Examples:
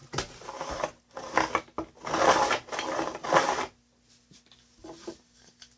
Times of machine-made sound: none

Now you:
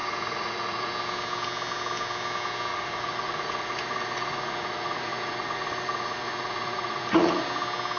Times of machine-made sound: 0.0-0.9; 2.7-7.4

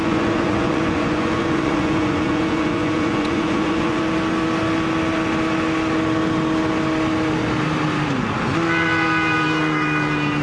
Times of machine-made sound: 0.0-4.0

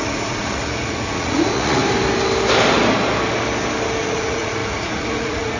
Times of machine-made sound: 0.0-1.8; 4.0-5.6

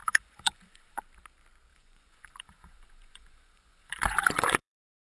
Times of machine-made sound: 0.0-1.0; 1.7-5.1

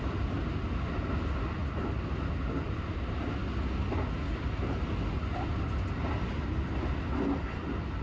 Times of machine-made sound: none